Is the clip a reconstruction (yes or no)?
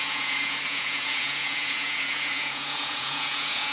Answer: yes